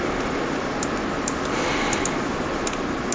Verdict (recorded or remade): recorded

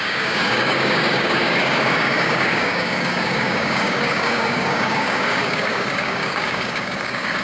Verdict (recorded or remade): remade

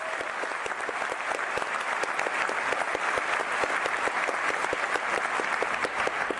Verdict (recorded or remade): recorded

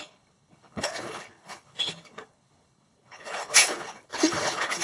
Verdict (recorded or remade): remade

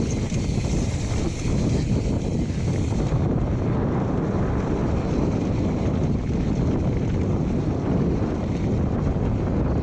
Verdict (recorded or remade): recorded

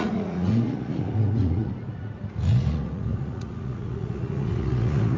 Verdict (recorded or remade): remade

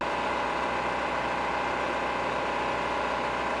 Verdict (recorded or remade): recorded